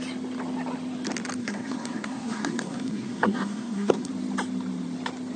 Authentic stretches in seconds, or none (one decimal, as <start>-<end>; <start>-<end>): 0.0-1.4; 4.1-5.4